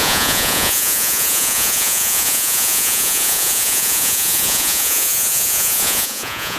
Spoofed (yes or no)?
yes